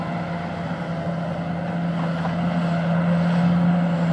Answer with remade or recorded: recorded